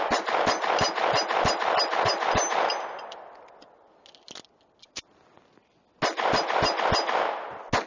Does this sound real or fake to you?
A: real